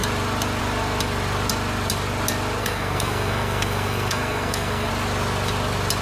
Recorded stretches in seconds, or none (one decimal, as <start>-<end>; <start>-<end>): 0.0-2.6; 4.9-6.0

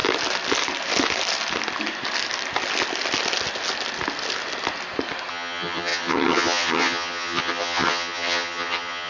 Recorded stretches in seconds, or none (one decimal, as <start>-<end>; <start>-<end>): 0.0-5.3

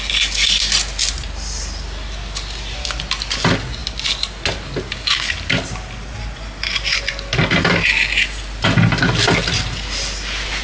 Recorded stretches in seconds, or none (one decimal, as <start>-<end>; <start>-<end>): 0.0-10.6

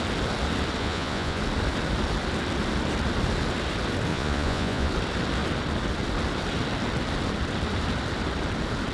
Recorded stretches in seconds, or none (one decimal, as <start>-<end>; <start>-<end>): 0.0-0.8; 1.4-4.1; 4.9-8.9